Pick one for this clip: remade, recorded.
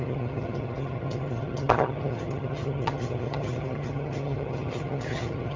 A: remade